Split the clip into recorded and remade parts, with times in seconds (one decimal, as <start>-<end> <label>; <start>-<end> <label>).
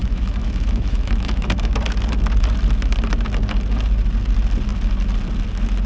0.0-1.7 remade; 1.7-5.9 recorded